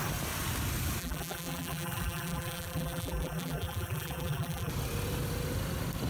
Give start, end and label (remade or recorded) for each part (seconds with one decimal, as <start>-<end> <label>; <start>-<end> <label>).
0.0-1.0 recorded; 1.0-4.7 remade; 4.7-6.1 recorded